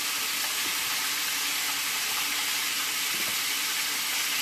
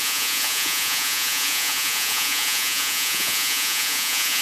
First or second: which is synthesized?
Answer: second